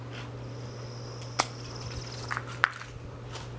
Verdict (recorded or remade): recorded